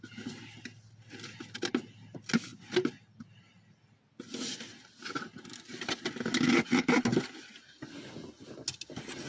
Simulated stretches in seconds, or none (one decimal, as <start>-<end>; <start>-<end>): none